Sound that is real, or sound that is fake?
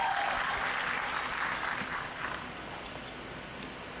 fake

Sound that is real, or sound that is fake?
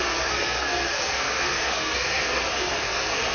fake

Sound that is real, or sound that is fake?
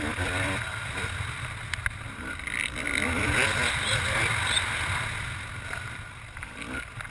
real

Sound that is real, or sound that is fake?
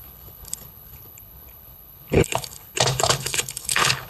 fake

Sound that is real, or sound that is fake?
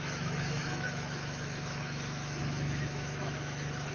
fake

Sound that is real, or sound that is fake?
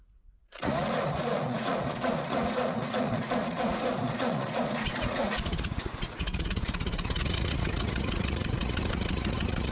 fake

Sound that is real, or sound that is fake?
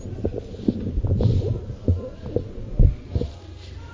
real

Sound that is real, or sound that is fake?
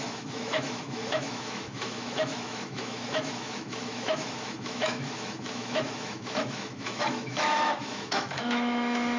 fake